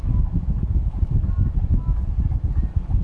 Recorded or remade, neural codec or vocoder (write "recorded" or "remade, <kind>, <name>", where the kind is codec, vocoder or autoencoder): recorded